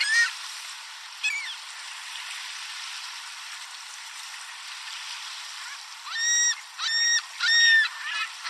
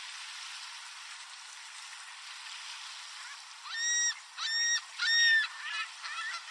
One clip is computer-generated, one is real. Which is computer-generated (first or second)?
first